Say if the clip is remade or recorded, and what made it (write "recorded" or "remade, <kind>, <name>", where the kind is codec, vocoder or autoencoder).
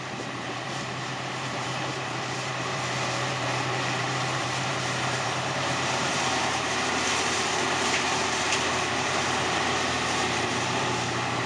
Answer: remade, vocoder, BigVGAN v2